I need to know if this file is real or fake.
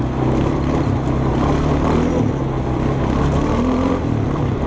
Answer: real